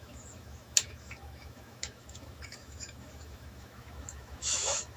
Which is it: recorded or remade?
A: remade